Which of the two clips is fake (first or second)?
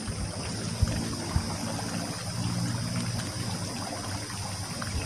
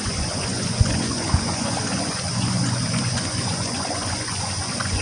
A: second